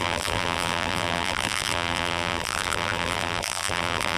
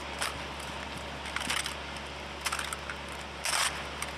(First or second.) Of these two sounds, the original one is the second